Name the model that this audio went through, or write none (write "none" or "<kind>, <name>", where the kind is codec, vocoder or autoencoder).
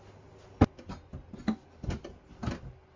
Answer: none